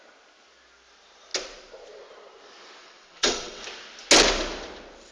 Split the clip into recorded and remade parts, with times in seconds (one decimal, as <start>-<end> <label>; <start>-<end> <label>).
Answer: 0.0-2.8 recorded; 2.8-3.6 remade; 3.6-5.1 recorded